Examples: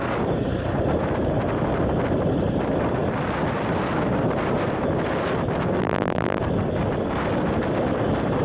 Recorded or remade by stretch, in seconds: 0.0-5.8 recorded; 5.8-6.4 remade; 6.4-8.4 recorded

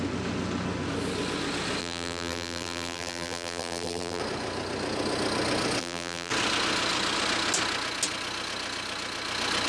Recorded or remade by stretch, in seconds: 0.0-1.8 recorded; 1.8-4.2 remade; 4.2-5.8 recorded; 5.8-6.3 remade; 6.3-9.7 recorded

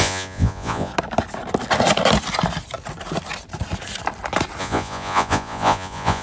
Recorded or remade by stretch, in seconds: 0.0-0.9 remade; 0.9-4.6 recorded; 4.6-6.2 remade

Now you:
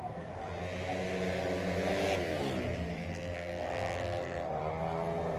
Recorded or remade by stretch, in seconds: 0.0-0.4 remade; 0.4-2.9 recorded; 2.9-3.5 remade; 3.5-4.0 recorded; 4.0-4.6 remade; 4.6-5.4 recorded